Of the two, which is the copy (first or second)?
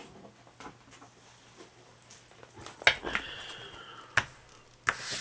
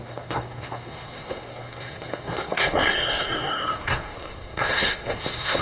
second